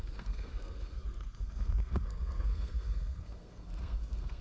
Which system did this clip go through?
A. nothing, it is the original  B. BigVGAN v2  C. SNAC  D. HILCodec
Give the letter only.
C